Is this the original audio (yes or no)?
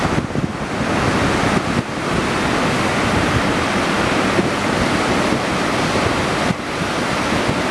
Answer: yes